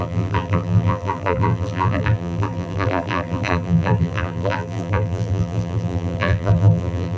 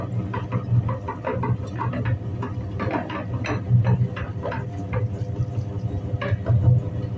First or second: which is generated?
first